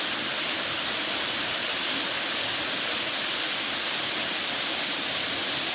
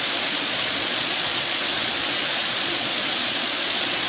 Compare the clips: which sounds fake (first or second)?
second